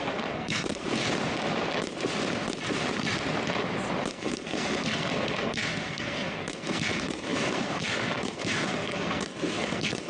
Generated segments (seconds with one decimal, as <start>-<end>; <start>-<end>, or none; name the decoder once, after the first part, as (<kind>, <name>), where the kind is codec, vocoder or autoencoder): 0.0-1.0 (codec, SNAC); 4.1-10.1

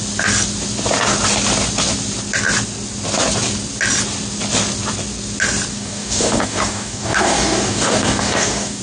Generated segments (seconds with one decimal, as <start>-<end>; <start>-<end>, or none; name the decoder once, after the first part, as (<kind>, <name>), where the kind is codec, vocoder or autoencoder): 5.7-8.8 (codec, DAC)

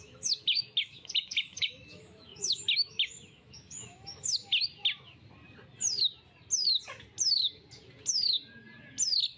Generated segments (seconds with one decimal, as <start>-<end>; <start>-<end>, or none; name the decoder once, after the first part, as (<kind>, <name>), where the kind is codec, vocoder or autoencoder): 0.0-4.4 (autoencoder, DAC-VAE)